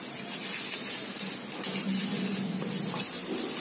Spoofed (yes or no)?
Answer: no